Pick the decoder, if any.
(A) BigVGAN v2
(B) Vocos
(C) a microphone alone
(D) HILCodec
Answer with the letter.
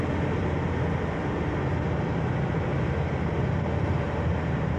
C